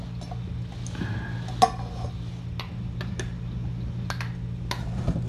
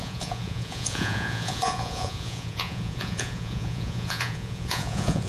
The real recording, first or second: first